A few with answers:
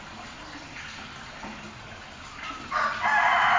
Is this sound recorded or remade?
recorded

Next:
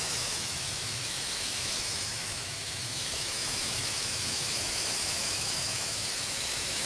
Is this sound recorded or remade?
remade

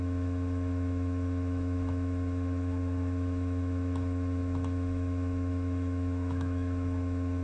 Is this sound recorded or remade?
remade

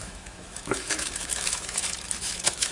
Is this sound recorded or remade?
remade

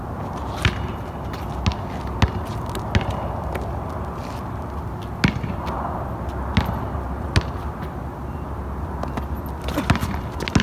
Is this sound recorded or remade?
recorded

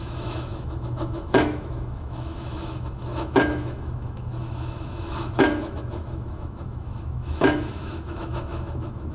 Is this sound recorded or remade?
remade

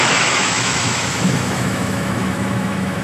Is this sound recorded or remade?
remade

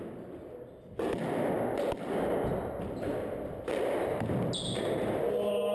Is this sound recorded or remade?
recorded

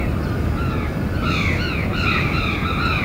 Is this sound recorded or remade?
recorded